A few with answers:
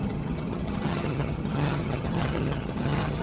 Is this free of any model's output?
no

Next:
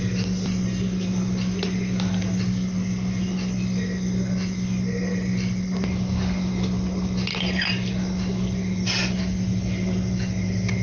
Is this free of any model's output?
yes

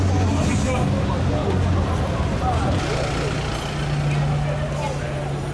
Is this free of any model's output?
yes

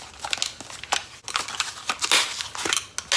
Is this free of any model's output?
yes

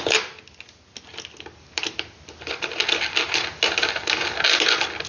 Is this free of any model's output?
yes